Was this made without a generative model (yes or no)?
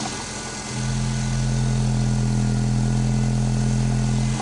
yes